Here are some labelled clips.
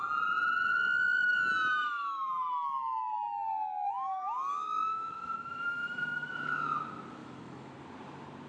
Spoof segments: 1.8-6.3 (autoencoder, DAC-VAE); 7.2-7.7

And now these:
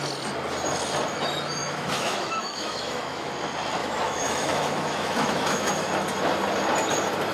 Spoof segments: 1.6-3.3 (autoencoder, DAC-VAE); 3.8-5.7